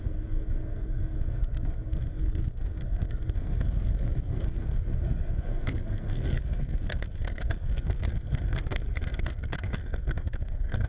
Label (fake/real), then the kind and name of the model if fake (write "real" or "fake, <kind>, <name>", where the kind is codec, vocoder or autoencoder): fake, codec, SNAC